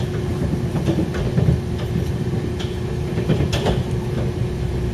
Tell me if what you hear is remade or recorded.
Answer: recorded